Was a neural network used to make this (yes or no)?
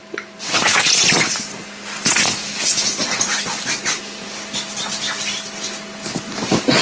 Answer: no